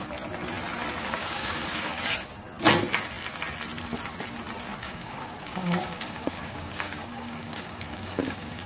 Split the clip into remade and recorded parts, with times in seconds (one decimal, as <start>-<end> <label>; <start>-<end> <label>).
0.0-1.0 recorded; 1.0-2.0 remade; 2.0-4.8 recorded; 4.8-8.7 remade